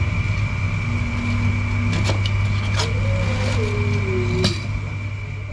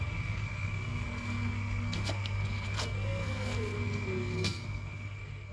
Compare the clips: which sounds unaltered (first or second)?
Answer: first